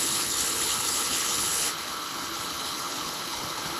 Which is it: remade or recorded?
remade